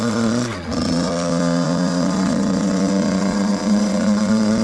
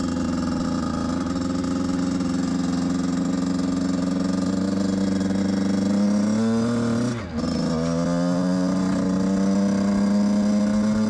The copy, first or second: first